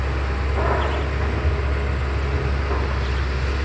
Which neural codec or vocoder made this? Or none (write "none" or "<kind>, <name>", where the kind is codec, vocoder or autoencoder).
none